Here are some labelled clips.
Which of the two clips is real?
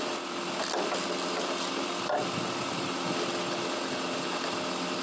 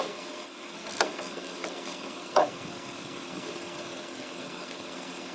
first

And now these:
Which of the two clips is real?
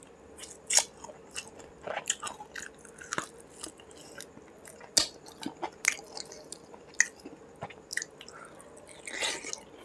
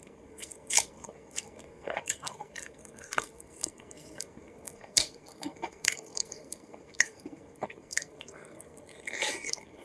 first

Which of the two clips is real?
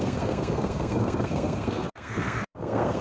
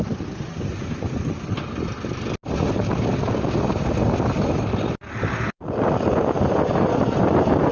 second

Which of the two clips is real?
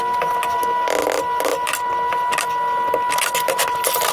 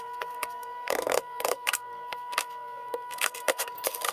first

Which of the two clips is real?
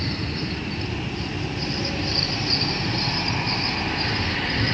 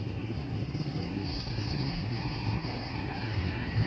first